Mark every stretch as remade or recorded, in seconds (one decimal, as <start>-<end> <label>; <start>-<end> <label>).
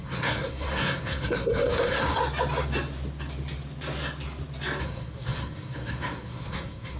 0.0-2.2 remade; 2.2-4.8 recorded; 4.8-7.0 remade